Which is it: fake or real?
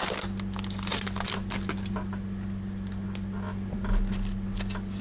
real